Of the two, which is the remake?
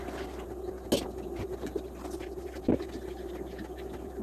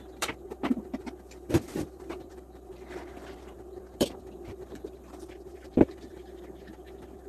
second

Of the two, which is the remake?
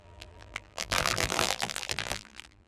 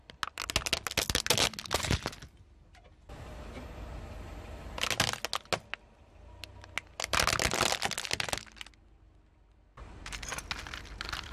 first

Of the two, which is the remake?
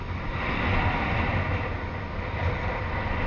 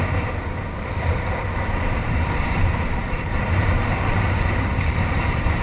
second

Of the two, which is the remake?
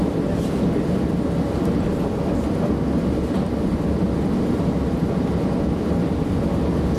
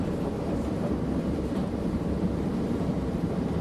second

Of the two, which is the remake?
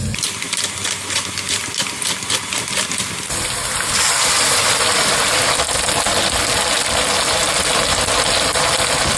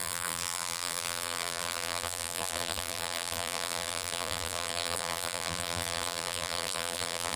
second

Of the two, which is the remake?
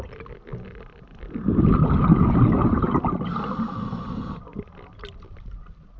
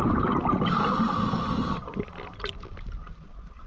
second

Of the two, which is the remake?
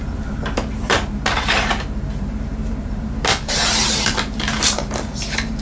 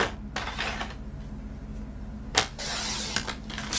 first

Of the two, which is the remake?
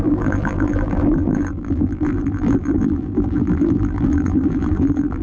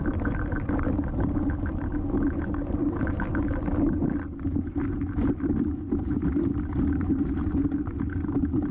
first